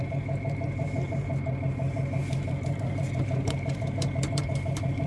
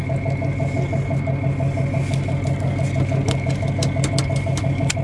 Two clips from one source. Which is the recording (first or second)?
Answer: second